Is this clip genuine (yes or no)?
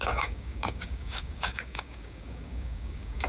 no